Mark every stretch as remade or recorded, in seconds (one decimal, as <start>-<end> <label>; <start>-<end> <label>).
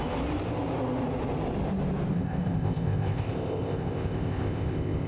0.0-2.1 recorded; 2.1-5.1 remade